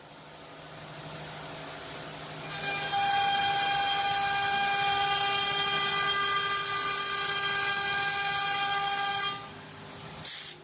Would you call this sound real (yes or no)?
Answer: yes